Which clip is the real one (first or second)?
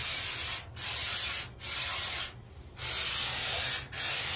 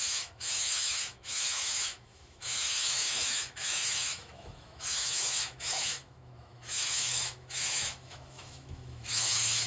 first